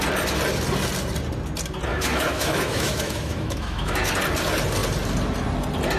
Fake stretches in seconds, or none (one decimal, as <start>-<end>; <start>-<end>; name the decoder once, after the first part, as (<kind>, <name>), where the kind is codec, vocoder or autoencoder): 1.9-4.1 (autoencoder, DAC-VAE)